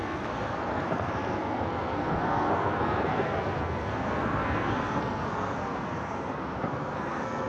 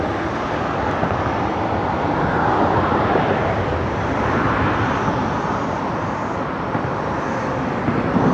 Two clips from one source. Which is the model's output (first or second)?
first